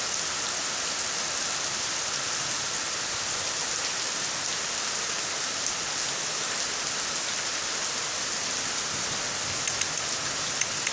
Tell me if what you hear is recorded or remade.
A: recorded